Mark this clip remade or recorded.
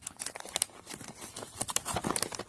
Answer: recorded